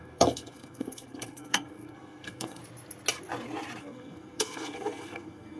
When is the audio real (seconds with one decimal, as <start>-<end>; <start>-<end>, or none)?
2.6-3.8